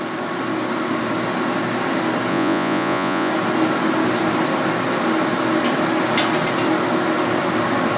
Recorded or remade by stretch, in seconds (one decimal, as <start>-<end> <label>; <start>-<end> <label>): 0.0-2.3 recorded; 2.3-3.3 remade; 3.3-8.0 recorded